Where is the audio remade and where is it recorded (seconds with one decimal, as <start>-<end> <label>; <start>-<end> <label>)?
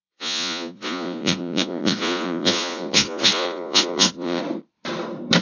0.0-4.4 remade; 4.4-5.4 recorded